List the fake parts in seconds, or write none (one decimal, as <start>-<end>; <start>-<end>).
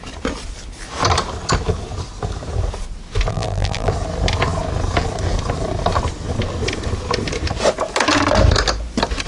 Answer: 3.3-3.9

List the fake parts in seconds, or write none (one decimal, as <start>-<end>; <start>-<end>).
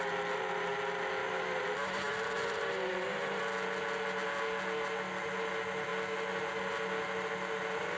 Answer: 1.2-3.4